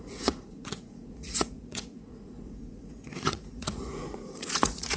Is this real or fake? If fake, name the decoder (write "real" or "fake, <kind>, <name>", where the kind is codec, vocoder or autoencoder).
fake, vocoder, Vocos